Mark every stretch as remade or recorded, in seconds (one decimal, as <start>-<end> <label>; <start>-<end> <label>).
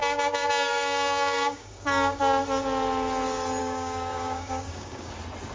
0.0-2.2 remade; 2.2-3.6 recorded; 3.6-5.1 remade; 5.1-5.5 recorded